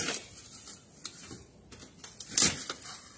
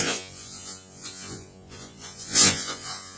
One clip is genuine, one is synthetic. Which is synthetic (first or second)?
second